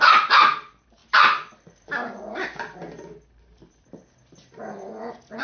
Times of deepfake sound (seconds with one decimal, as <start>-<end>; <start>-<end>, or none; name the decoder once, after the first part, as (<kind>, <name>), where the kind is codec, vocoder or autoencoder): none